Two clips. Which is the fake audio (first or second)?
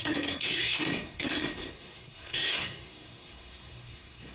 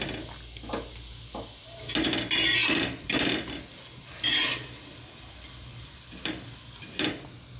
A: first